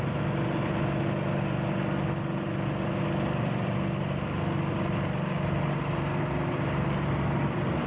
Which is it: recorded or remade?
recorded